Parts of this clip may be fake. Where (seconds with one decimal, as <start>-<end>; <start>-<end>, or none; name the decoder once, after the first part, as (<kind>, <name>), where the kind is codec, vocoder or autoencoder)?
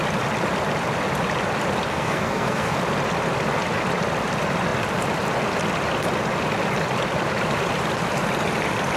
1.9-2.8 (codec, SNAC)